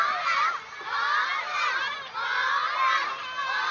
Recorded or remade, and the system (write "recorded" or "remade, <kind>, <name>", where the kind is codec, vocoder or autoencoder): recorded